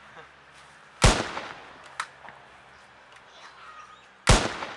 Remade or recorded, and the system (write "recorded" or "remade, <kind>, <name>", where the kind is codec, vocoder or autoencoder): recorded